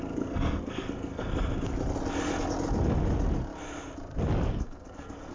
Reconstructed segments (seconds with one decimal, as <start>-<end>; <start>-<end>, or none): 0.0-1.3; 4.5-5.3